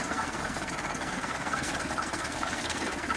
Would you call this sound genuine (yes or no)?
no